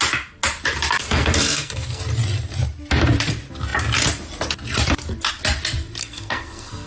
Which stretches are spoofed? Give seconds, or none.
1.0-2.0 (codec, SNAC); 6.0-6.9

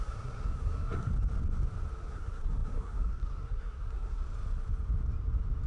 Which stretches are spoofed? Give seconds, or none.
0.0-1.1 (codec, SNAC); 2.1-4.2